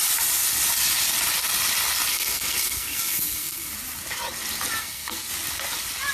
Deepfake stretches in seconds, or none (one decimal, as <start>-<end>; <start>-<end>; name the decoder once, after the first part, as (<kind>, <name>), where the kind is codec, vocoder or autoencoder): 2.1-3.7 (codec, SNAC); 4.8-5.3